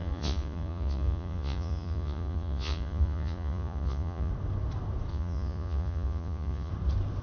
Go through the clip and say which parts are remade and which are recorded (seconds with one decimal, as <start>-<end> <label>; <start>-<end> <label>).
0.0-4.3 remade; 4.3-5.1 recorded; 5.1-6.7 remade; 6.7-7.2 recorded